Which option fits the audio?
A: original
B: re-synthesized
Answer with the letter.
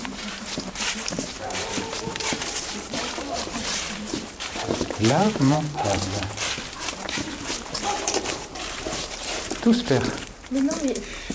B